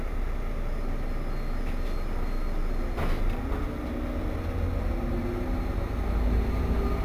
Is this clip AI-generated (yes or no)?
no